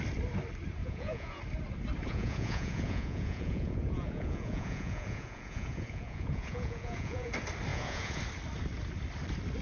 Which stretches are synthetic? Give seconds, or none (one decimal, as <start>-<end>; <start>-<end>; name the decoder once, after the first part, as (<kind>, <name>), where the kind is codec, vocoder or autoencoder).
0.8-1.4 (vocoder, Vocos); 2.1-7.3; 7.7-8.2

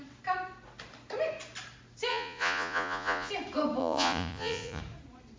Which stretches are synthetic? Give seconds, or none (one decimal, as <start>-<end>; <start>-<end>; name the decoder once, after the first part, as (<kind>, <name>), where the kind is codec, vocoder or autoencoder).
2.1-3.3 (vocoder, Vocos); 3.8-4.8

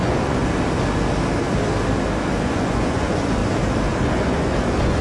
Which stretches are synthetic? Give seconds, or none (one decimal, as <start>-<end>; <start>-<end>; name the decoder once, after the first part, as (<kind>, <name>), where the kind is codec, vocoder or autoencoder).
0.0-0.4 (vocoder, Vocos); 2.4-3.4; 4.0-5.0

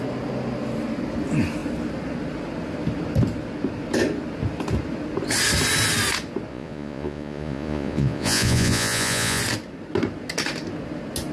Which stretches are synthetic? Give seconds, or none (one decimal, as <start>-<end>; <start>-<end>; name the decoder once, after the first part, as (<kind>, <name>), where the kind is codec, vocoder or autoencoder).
6.5-9.4 (vocoder, Vocos)

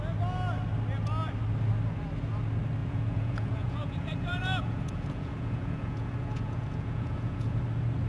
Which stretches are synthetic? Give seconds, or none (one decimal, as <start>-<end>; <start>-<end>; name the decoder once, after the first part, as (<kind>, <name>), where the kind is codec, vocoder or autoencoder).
2.8-7.6 (vocoder, Vocos)

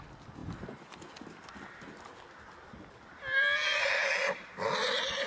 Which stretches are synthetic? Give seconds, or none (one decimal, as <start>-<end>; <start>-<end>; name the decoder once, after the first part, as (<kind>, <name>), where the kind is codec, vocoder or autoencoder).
none

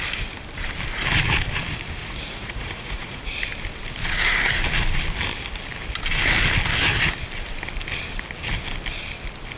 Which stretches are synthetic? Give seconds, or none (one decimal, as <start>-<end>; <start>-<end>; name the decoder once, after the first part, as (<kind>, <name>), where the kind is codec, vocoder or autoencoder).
2.0-3.2 (vocoder, Vocos)